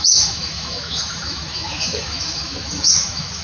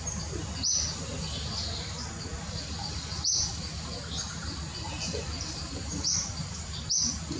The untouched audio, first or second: second